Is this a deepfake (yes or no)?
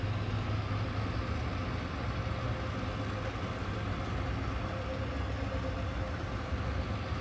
no